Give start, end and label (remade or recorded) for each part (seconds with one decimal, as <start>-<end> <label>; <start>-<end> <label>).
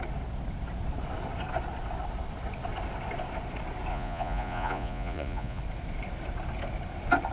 0.0-3.9 recorded; 3.9-5.6 remade; 5.6-7.3 recorded